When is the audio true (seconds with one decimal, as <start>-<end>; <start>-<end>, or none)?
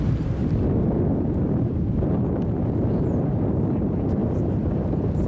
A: 0.4-3.6; 4.2-5.3